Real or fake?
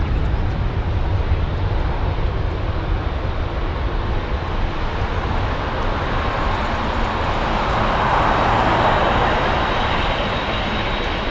real